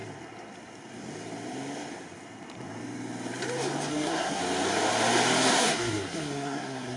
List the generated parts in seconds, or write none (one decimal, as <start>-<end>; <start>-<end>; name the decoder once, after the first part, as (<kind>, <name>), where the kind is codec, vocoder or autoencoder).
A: 3.9-4.4 (codec, SNAC); 5.5-7.0

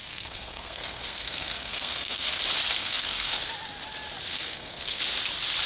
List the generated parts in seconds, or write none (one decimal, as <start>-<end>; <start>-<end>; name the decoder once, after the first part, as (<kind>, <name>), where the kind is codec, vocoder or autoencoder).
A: 0.0-2.4 (codec, SNAC); 2.8-3.5; 4.3-5.0

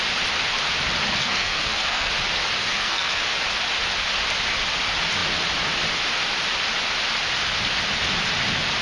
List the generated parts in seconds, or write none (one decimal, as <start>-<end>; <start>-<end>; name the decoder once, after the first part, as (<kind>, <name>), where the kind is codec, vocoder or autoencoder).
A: 1.2-2.1 (codec, SNAC); 2.6-3.2

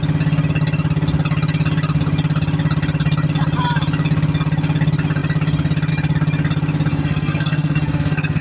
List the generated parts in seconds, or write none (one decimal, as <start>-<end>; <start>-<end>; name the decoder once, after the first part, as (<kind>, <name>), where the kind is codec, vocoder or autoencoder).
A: 6.9-8.4 (codec, SNAC)

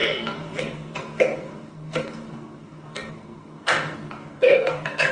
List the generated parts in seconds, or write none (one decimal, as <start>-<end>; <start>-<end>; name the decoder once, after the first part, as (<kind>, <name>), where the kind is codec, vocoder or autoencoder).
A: 0.0-5.1 (codec, SNAC)